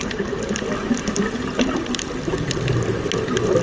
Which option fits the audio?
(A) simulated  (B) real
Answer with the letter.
B